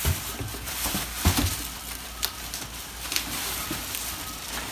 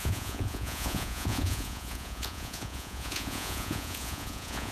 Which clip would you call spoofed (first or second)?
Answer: second